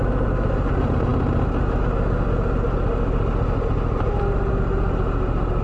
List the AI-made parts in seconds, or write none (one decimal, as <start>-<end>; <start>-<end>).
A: none